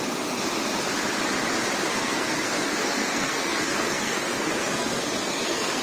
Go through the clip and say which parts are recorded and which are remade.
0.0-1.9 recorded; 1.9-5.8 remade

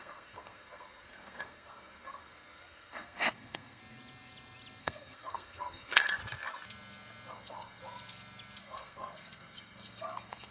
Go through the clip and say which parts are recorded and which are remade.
0.0-3.8 remade; 3.8-4.8 recorded; 4.8-6.2 remade; 6.2-7.3 recorded; 7.3-7.8 remade; 7.8-8.6 recorded; 8.6-10.5 remade